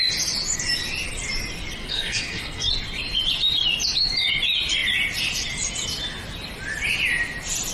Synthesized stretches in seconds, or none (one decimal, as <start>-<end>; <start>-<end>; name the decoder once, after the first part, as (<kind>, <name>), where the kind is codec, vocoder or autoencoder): 1.8-2.7 (codec, SNAC)